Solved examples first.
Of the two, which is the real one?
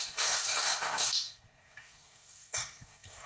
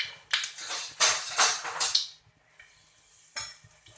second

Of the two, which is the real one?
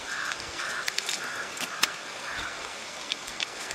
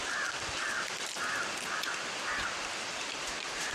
second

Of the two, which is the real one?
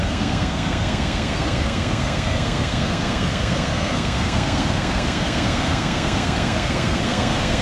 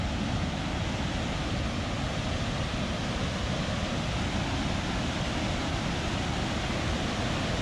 second